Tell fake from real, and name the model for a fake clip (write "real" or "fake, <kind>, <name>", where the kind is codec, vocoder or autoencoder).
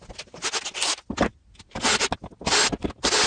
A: real